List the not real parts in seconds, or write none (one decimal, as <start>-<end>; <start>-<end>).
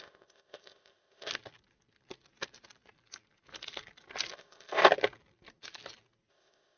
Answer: 0.0-1.3; 4.3-4.8; 6.3-6.8